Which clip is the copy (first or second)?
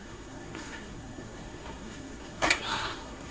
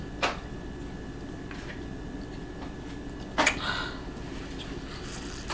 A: first